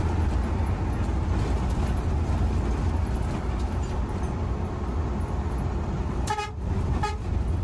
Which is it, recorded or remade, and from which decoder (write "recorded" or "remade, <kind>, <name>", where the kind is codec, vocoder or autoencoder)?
recorded